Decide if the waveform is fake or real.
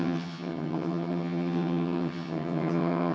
fake